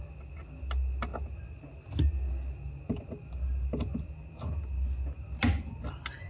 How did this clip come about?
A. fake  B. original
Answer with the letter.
B